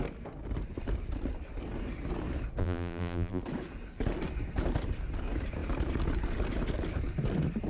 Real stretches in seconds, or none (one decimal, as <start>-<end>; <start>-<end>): 0.0-2.6; 3.4-7.7